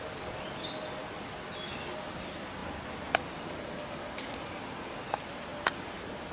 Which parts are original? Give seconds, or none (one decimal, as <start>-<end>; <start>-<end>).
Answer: 0.0-6.3